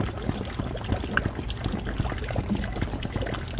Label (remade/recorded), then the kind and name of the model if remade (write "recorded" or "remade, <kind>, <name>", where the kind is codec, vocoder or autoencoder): recorded